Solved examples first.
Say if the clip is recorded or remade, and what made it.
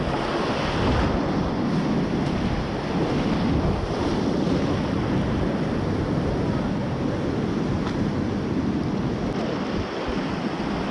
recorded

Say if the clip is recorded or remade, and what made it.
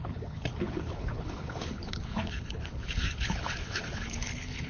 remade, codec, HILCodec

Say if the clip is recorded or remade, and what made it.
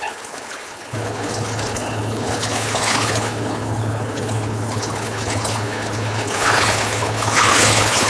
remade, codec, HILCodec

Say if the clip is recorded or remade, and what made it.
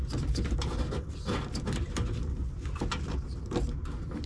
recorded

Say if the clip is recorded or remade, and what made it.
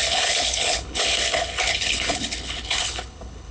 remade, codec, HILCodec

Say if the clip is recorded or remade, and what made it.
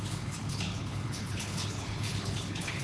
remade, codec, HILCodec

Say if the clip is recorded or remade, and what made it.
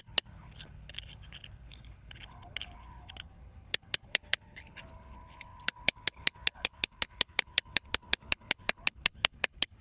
remade, codec, HILCodec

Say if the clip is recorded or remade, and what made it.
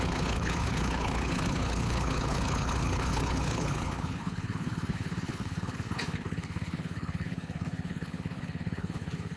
remade, codec, HILCodec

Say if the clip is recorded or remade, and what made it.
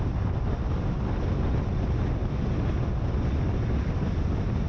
recorded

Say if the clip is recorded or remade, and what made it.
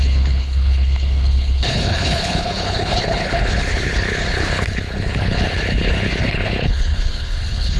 remade, codec, HILCodec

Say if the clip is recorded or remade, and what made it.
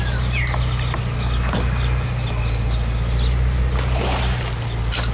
recorded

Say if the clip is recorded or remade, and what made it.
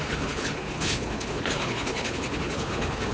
remade, codec, HILCodec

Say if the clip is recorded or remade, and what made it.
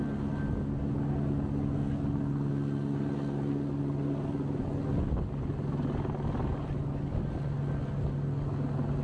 recorded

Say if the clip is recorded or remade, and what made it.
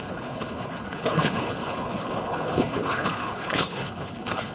remade, codec, HILCodec